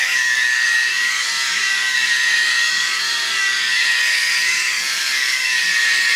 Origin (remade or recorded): remade